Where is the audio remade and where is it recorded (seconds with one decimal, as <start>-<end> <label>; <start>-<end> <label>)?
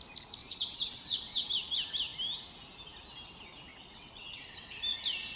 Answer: 0.0-0.4 recorded; 0.4-1.5 remade; 1.5-3.7 recorded; 3.7-4.8 remade; 4.8-5.4 recorded